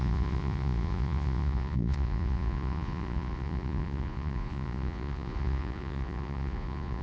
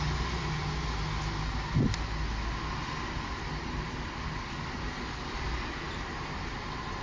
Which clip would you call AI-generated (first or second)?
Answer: first